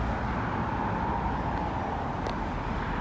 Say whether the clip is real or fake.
real